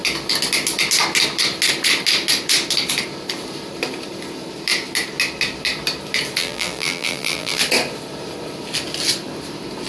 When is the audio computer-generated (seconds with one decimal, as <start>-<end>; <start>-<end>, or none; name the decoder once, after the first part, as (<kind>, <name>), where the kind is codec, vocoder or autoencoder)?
6.4-7.6 (vocoder, BigVGAN v2)